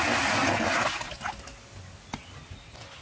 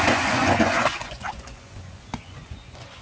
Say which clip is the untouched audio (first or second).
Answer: first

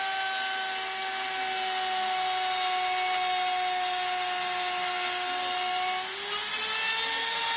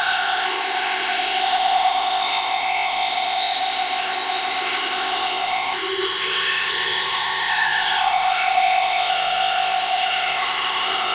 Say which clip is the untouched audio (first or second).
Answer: first